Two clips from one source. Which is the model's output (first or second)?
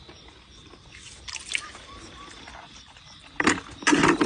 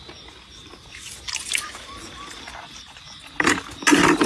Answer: first